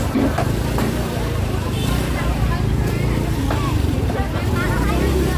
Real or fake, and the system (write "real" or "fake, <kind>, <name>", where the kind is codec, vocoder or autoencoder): fake, vocoder, BigVGAN v2